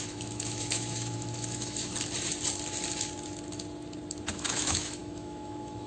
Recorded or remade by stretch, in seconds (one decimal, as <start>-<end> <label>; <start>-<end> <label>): 0.0-1.9 remade; 1.9-4.3 recorded; 4.3-5.9 remade